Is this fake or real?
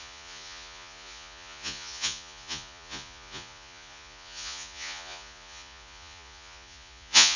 fake